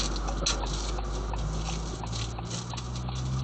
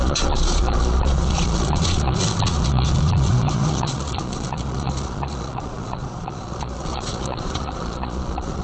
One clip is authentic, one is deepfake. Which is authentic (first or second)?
first